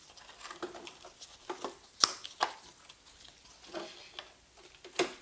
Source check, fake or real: real